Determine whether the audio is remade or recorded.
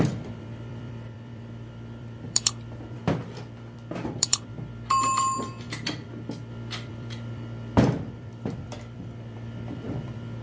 remade